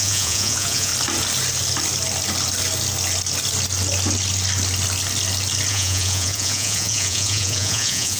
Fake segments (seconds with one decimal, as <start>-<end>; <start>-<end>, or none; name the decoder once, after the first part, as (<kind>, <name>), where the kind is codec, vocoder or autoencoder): 0.0-0.9 (vocoder, Vocos); 5.7-8.2